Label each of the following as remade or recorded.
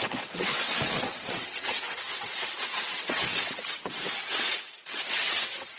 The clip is remade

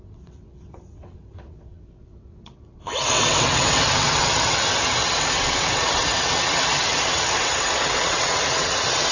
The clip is remade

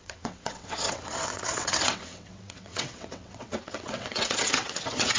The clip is remade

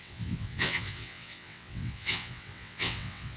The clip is remade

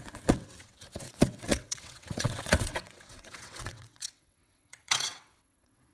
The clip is remade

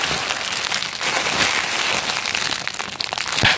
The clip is recorded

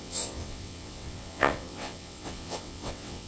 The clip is remade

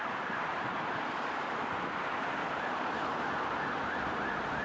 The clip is recorded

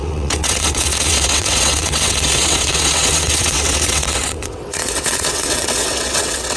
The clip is remade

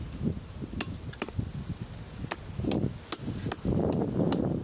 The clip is recorded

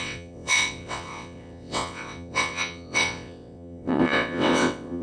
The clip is remade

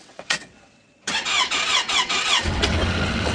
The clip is remade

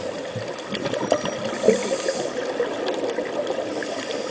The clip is recorded